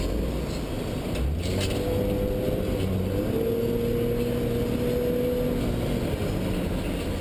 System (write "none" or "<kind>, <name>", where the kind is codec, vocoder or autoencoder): none